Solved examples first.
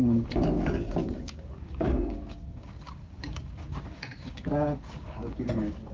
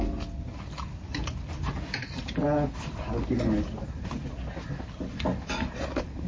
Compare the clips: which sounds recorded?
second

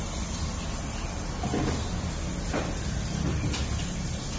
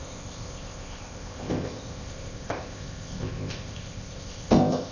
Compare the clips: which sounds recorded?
first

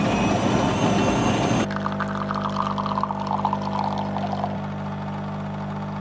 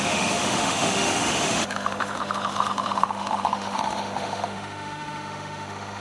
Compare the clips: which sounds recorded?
first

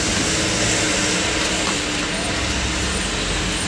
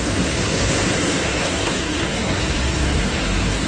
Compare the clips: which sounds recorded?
first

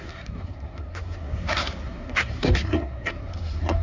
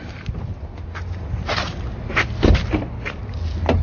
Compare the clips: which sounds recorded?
second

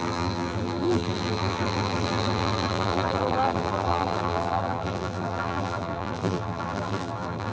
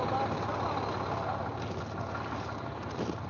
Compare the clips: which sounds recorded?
second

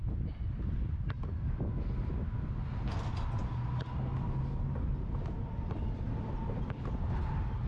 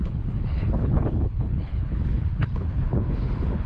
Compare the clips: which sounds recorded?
first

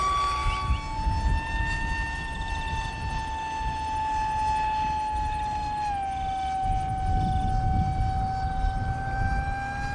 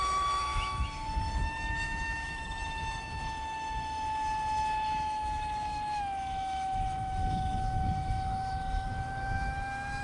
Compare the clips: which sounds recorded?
first